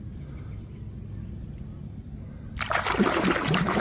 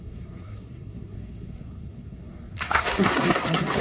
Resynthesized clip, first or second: second